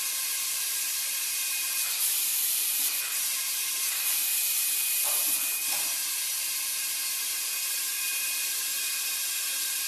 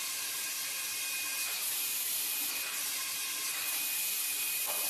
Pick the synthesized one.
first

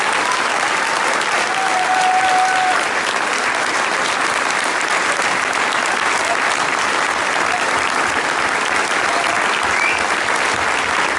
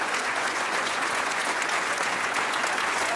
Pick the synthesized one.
second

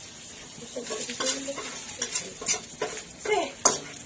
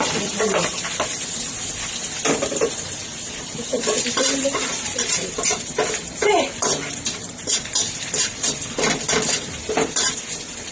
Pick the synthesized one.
second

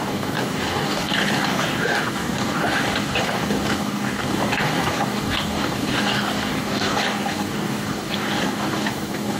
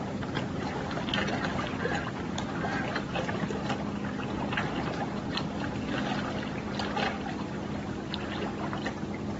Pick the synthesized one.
first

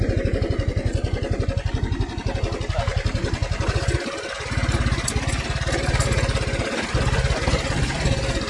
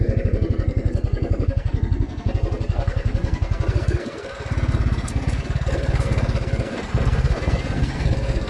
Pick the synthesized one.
second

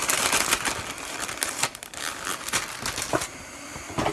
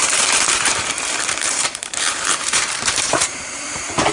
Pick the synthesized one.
second